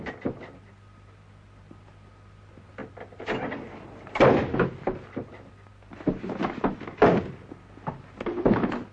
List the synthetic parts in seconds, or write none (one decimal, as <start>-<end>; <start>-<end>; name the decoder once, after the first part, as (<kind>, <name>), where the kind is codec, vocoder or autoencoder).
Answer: none